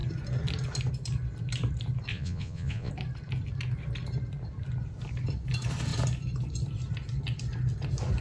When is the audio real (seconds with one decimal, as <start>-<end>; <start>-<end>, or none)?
0.0-2.1; 2.9-8.2